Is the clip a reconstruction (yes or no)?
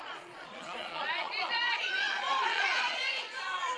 yes